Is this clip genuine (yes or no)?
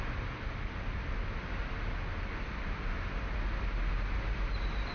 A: yes